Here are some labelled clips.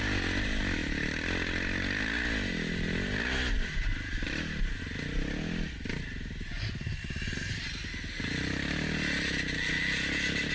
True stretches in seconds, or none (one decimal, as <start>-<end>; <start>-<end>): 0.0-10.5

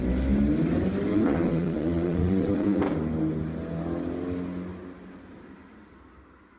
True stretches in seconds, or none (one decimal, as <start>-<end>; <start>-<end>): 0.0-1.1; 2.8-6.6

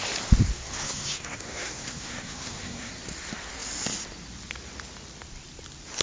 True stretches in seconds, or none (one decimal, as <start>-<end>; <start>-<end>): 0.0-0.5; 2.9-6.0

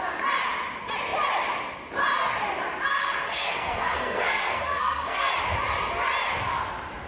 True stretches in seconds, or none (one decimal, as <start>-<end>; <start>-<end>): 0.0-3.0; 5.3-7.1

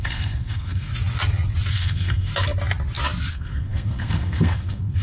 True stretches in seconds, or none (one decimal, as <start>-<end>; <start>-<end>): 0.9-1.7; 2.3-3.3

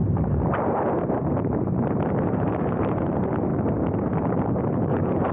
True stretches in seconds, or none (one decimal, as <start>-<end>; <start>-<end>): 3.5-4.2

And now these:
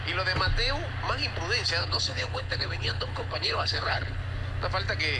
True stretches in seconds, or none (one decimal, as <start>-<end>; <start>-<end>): 0.0-1.8; 4.2-5.2